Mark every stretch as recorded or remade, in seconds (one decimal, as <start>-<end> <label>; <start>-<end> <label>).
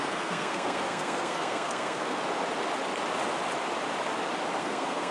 0.0-2.2 remade; 2.2-4.6 recorded; 4.6-5.1 remade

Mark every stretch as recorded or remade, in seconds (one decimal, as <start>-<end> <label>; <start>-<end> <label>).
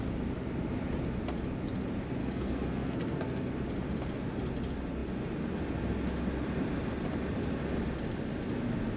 0.0-2.2 recorded; 2.2-3.5 remade; 3.5-9.0 recorded